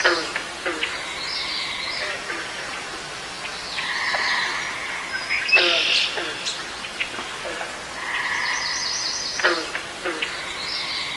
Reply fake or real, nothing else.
real